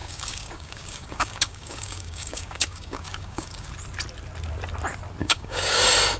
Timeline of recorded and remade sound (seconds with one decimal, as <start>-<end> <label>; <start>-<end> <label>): 0.0-3.7 remade; 3.7-5.2 recorded; 5.2-5.8 remade; 5.8-6.2 recorded